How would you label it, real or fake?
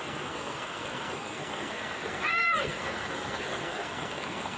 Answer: fake